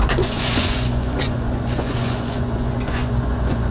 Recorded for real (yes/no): no